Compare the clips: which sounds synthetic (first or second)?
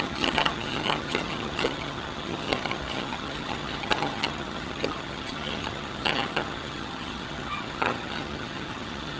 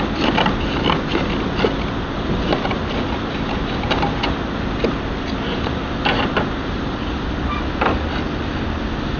first